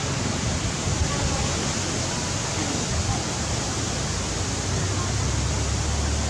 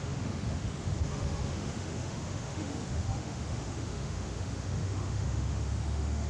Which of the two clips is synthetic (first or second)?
second